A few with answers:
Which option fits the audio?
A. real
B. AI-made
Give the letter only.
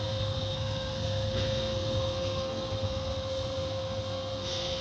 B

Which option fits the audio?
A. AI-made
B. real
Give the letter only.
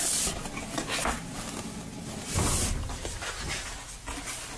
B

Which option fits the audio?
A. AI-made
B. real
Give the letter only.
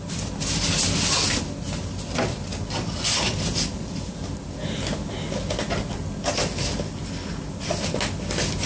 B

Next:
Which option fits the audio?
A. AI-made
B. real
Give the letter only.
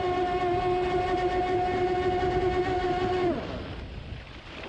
B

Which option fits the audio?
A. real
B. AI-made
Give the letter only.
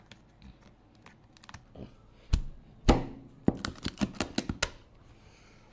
A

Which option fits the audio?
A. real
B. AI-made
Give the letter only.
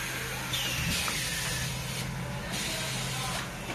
A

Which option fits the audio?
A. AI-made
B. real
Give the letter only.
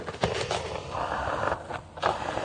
B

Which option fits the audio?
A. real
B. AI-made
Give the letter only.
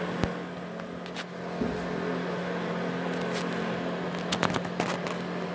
A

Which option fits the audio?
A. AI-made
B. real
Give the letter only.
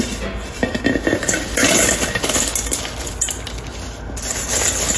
B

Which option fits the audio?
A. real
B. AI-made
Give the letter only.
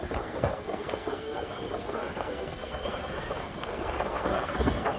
B